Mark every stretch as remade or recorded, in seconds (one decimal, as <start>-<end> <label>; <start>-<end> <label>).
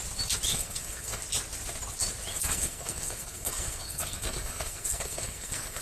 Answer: 0.0-0.5 recorded; 0.5-1.2 remade; 1.2-2.3 recorded; 2.3-5.8 remade